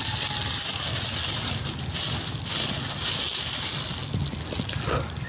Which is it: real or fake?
real